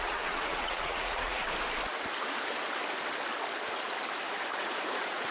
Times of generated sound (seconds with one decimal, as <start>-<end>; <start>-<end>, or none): 0.0-1.4; 4.6-5.3